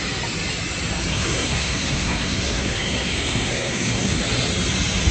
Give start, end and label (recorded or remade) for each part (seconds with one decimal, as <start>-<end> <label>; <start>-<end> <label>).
0.0-1.1 recorded; 1.1-4.2 remade; 4.2-5.1 recorded